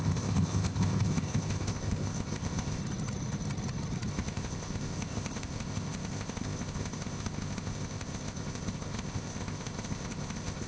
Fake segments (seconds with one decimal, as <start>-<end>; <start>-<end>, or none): 0.0-2.8; 4.1-10.7